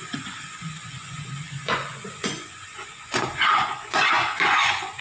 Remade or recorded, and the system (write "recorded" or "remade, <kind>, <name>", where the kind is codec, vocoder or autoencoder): remade, vocoder, Vocos